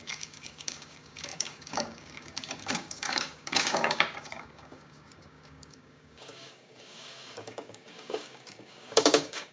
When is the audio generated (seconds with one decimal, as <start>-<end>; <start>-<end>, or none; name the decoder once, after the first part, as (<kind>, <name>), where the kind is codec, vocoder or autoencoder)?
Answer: 0.0-9.5 (codec, DAC)

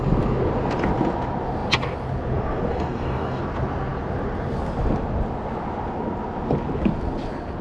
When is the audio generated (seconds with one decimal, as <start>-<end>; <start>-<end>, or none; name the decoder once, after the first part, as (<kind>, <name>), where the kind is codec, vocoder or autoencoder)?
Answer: 2.7-3.4 (codec, DAC)

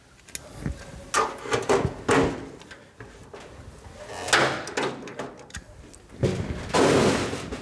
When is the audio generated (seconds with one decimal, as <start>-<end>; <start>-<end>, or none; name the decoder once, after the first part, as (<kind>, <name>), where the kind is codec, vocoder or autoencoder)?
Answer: none

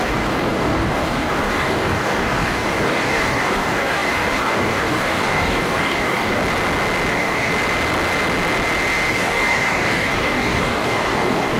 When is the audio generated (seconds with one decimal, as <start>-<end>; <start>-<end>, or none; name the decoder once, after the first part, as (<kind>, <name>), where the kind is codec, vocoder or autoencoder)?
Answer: 0.0-6.4 (codec, DAC); 7.1-7.5; 9.1-11.6